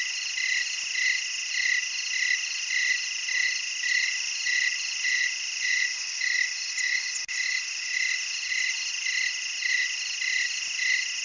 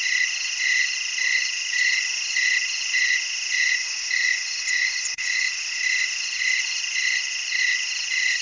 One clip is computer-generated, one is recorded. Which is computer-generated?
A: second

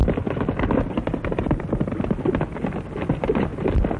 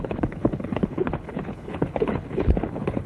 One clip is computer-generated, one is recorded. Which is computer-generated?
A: second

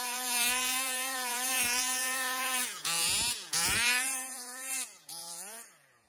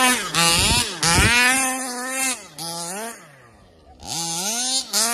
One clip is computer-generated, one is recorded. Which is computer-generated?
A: first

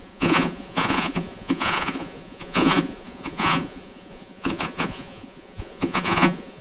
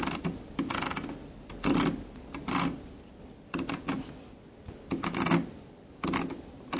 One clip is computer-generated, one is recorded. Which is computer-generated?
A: first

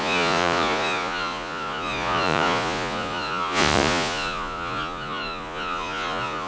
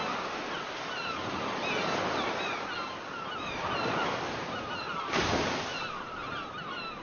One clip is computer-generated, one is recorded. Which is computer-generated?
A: first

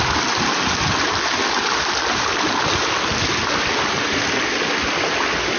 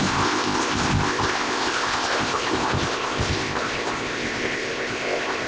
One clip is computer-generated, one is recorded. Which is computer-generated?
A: second